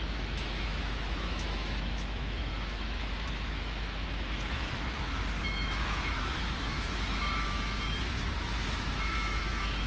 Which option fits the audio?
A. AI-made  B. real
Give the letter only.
A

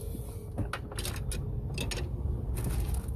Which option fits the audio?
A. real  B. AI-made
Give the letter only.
A